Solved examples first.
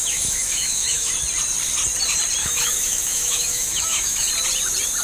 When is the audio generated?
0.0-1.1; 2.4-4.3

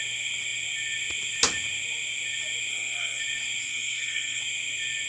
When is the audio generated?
2.7-3.2; 3.6-4.4

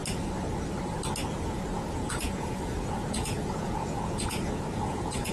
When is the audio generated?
1.7-5.3

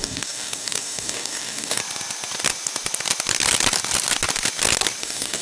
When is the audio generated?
0.0-1.8; 5.0-5.4

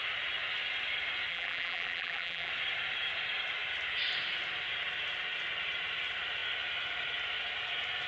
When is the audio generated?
1.3-2.5

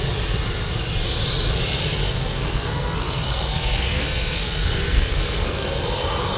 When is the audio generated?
2.0-5.8

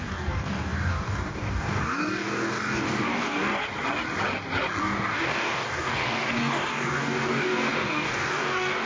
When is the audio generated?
0.0-3.5; 4.8-8.9